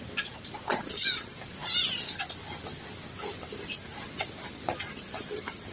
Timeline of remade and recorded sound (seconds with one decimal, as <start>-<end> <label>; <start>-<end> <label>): 0.0-1.6 remade; 1.6-5.0 recorded; 5.0-5.7 remade